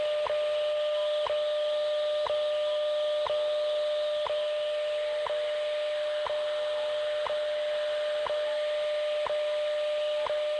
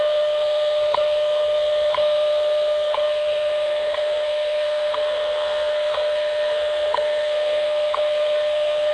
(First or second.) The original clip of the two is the first